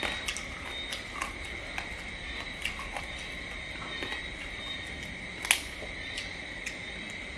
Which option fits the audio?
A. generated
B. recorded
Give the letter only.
B